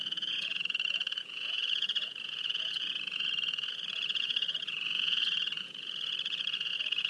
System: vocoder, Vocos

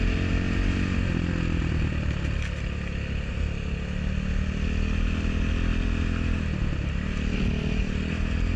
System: none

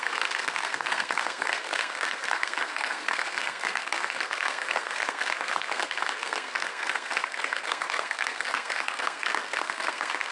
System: codec, SNAC